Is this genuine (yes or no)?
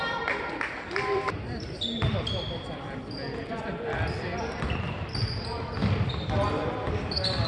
no